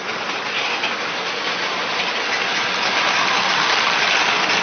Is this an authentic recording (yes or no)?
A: yes